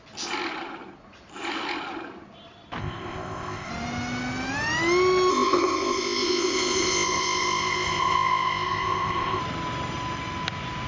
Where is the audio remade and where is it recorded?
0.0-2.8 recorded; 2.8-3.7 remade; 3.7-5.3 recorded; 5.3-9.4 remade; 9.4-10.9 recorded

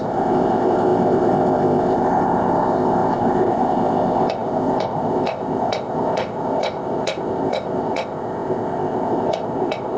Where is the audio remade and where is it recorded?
0.0-10.0 remade